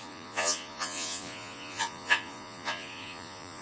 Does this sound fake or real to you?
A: fake